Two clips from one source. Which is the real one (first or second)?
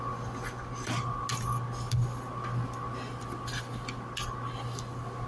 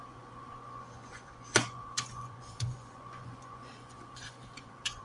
first